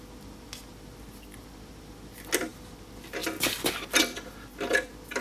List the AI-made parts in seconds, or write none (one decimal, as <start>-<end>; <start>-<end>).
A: none